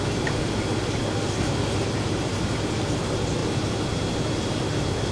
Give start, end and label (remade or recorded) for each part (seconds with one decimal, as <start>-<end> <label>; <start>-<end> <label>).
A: 0.0-3.4 recorded; 3.4-4.1 remade; 4.1-5.1 recorded